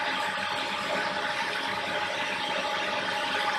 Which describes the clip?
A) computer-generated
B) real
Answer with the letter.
B